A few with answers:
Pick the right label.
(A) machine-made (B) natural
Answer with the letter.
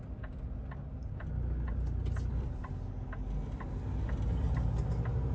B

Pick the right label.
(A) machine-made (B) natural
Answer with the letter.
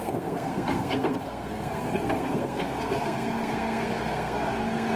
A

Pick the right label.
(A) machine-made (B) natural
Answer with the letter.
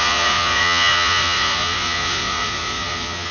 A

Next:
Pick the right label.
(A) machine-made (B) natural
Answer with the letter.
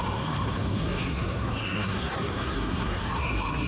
A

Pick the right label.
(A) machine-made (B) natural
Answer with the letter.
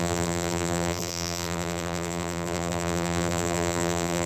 A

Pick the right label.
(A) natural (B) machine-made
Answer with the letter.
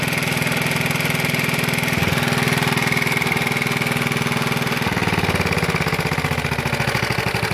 A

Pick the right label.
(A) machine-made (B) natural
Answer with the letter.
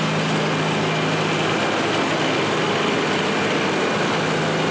B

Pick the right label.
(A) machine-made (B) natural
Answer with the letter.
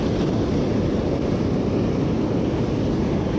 B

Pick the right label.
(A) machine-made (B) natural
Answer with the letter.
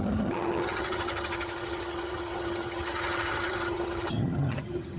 A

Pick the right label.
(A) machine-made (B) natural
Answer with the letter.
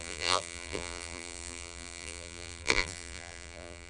A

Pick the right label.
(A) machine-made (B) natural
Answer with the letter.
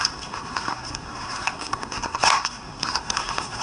A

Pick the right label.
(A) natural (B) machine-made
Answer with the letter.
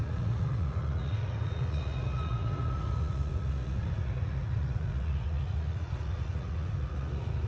B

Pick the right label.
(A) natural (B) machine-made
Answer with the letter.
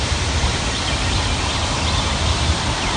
B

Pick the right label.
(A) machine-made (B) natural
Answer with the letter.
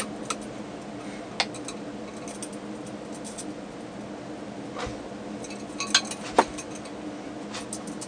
B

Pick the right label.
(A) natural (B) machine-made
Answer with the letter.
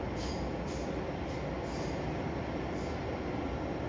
A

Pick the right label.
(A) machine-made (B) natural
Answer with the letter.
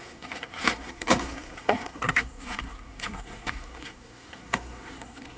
A